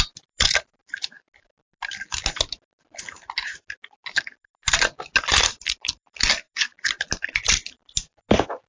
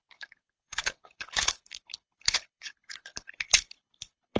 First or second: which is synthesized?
second